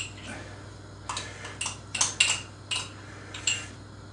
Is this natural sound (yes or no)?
yes